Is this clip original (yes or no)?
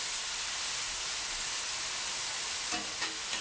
yes